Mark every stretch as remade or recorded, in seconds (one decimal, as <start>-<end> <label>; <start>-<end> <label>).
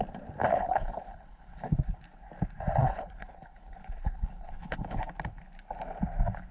0.0-0.5 recorded; 0.5-2.0 remade; 2.0-2.8 recorded; 2.8-5.0 remade; 5.0-6.5 recorded